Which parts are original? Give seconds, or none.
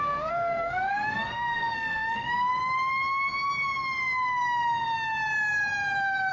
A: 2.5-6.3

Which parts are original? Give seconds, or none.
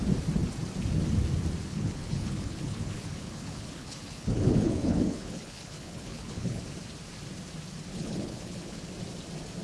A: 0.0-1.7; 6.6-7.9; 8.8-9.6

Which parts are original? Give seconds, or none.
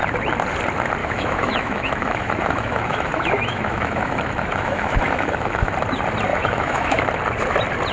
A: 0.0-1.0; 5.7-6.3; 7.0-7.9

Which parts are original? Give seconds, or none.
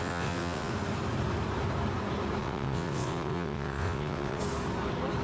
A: 0.7-2.4; 4.4-5.2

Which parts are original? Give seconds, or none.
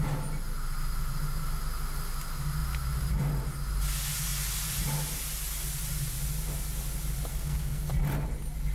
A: 0.0-7.3; 7.9-8.7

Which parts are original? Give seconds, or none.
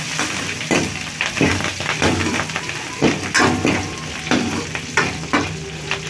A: 0.0-6.1